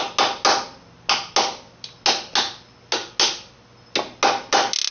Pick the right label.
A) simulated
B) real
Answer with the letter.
B